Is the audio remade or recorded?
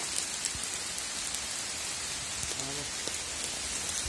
recorded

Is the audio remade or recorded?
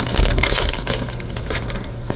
remade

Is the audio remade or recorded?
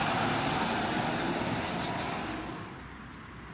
recorded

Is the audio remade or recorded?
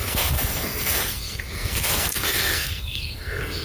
remade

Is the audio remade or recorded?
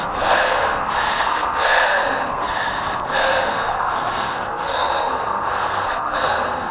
remade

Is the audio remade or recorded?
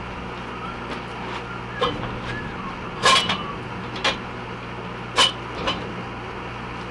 recorded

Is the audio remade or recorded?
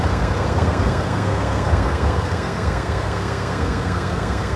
remade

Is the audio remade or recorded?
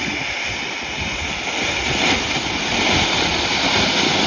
recorded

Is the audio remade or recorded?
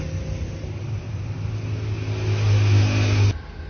recorded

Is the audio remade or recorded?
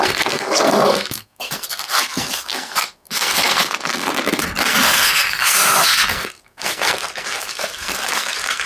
remade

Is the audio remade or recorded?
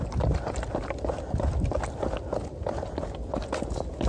recorded